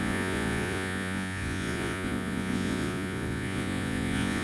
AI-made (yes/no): yes